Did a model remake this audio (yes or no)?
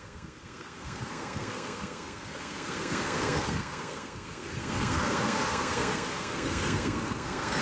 yes